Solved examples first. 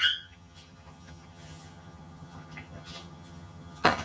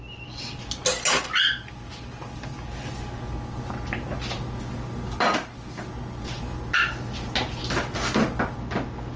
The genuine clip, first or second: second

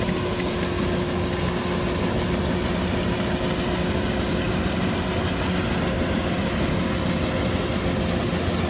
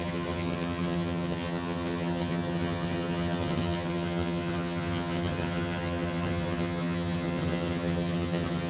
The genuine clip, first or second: first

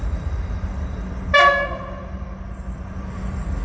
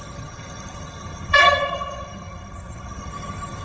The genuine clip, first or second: first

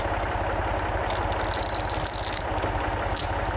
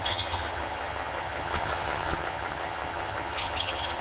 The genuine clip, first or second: first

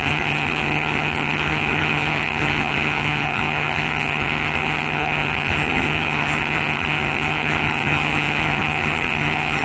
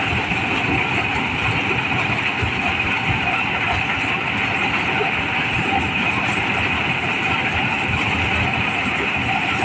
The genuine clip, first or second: second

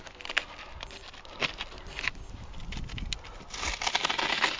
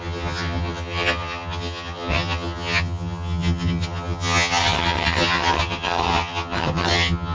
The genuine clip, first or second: first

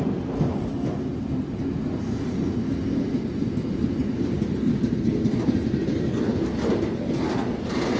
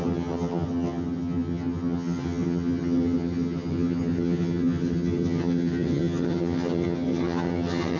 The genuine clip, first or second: first